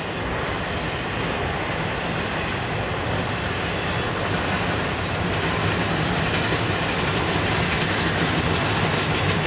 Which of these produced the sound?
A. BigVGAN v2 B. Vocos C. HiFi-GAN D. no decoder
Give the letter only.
D